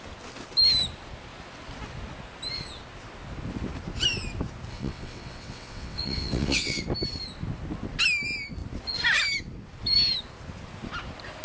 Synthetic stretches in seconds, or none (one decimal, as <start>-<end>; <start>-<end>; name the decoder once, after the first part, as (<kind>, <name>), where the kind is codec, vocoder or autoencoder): 4.7-6.8 (vocoder, WaveNeXt)

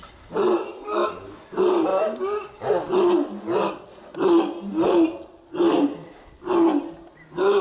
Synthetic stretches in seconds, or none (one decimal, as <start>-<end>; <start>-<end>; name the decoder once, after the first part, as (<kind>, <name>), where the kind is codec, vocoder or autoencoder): none

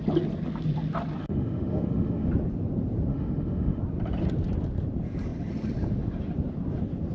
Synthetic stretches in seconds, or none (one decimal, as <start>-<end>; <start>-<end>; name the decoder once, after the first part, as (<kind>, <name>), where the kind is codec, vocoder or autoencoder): 1.2-2.3 (autoencoder, DAC-VAE); 3.1-3.8